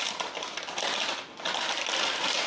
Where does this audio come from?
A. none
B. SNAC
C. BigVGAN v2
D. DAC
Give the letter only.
A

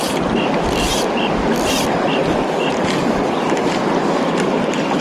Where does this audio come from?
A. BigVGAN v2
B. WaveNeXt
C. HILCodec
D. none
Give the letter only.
D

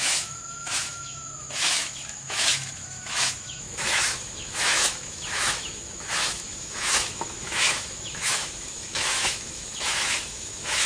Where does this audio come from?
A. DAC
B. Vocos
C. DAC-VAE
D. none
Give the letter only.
C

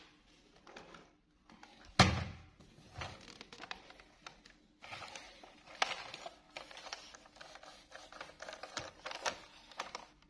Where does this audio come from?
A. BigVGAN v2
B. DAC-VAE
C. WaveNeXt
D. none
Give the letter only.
D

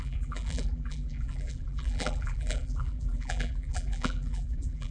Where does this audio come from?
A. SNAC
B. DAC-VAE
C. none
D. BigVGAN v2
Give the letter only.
D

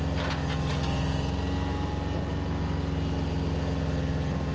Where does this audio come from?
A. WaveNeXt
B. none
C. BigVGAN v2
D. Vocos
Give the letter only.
B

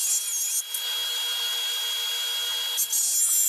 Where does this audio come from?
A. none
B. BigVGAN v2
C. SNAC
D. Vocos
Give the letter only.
A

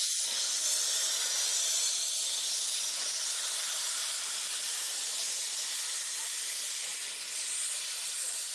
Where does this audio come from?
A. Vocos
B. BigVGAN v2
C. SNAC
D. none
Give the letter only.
D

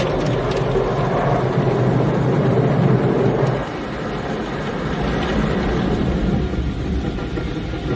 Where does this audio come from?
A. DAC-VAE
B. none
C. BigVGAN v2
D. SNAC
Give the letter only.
B